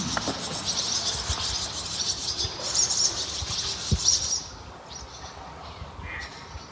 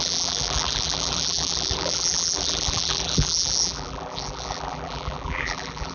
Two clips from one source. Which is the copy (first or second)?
second